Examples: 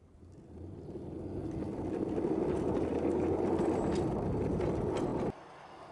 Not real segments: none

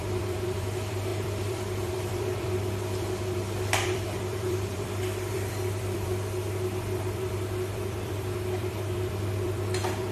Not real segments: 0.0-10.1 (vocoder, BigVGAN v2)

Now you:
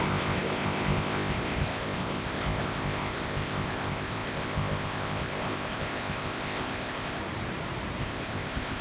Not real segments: 0.0-7.2 (codec, ZipCodec); 8.0-8.8

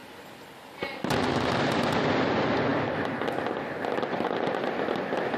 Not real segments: none